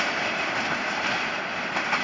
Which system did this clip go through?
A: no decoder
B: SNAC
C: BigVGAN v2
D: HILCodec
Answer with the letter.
C